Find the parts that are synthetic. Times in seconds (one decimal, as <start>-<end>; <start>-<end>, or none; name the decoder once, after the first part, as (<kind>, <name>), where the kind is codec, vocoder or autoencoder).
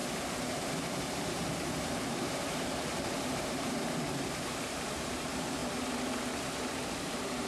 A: 0.0-5.6 (vocoder, BigVGAN v2); 7.0-7.5